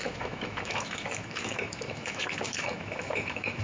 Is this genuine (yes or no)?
no